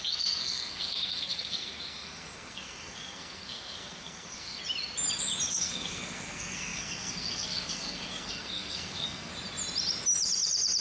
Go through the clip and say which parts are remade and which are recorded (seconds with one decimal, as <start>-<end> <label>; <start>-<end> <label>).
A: 0.0-4.6 remade; 4.6-5.5 recorded; 5.5-9.3 remade; 9.3-10.8 recorded